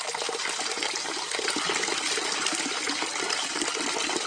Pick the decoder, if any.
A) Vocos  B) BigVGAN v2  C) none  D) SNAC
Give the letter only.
C